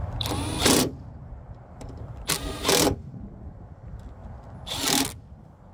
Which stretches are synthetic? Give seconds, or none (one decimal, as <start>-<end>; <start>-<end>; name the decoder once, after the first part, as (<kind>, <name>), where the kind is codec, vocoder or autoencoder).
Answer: 0.6-2.1 (vocoder, BigVGAN v2)